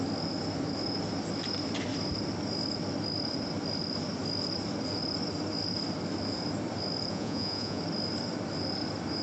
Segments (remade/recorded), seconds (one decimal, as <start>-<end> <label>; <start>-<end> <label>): 0.0-7.1 recorded; 7.1-7.8 remade; 7.8-9.2 recorded